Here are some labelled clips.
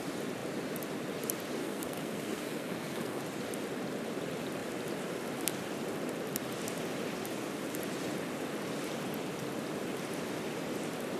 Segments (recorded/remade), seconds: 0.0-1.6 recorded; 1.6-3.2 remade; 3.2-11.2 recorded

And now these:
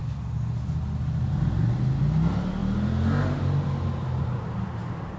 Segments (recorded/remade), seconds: 0.0-5.2 recorded

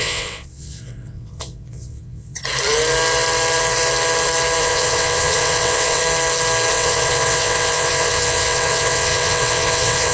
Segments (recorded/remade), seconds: 0.0-2.4 remade; 2.4-4.6 recorded; 4.6-6.0 remade; 6.0-6.7 recorded; 6.7-10.1 remade